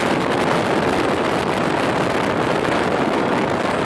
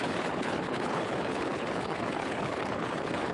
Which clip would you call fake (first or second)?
second